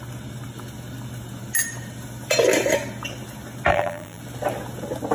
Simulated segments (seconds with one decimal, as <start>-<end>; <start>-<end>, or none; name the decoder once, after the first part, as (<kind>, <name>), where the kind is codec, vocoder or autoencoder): 3.7-4.2 (vocoder, BigVGAN v2)